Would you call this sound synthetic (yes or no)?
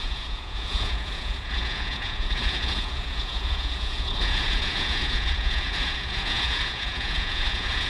yes